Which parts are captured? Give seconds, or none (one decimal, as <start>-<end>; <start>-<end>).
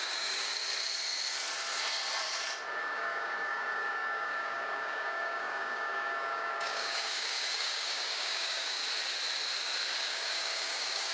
0.5-2.8; 8.8-10.0